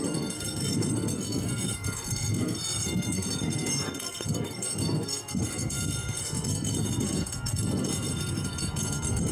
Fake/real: fake